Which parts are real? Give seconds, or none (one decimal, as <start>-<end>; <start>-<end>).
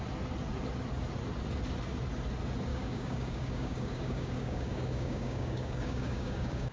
0.0-2.7